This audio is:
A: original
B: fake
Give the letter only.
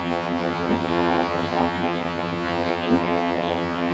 B